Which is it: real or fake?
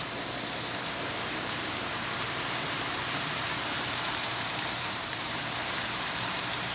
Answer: fake